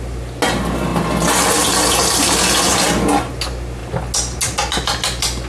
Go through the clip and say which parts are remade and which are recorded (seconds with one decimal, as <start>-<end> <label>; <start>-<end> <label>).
0.0-5.5 recorded